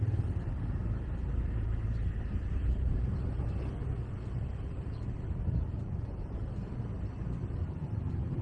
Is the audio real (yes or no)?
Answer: no